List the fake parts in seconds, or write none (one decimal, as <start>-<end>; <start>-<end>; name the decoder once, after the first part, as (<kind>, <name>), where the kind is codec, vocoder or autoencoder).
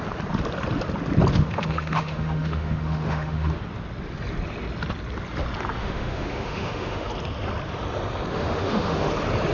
1.3-3.6 (autoencoder, DAC-VAE); 5.8-7.1; 8.3-9.1